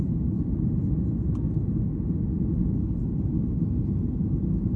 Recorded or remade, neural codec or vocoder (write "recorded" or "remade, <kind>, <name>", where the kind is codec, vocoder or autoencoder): recorded